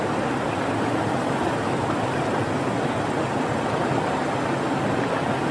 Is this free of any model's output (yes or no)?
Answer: yes